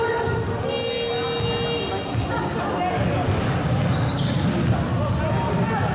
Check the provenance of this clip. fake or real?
real